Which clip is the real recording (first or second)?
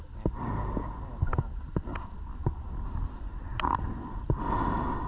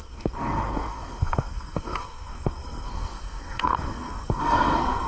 first